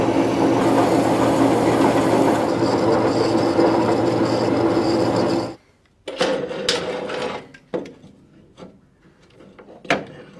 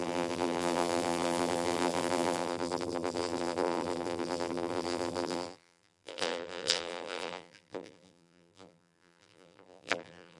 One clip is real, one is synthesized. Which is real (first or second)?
first